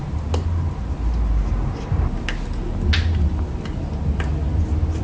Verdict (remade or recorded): recorded